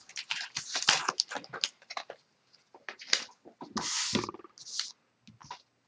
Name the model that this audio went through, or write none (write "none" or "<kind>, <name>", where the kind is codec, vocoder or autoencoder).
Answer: none